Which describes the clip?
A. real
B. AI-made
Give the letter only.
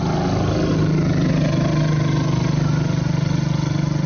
A